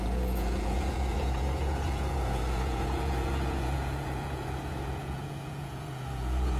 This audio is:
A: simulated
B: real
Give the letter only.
A